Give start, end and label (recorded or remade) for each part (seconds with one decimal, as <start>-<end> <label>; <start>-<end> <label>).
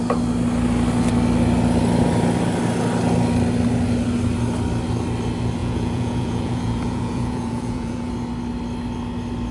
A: 0.0-5.6 recorded; 5.6-8.1 remade; 8.1-9.5 recorded